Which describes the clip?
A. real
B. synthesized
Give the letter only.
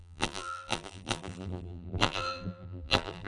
B